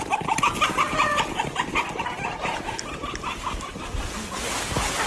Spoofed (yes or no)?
no